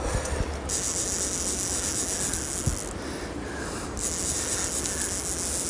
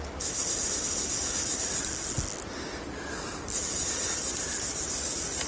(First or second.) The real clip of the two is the first